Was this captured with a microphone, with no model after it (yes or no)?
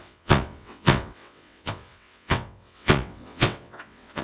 no